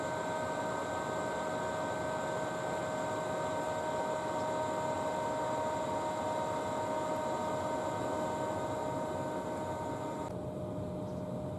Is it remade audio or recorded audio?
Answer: recorded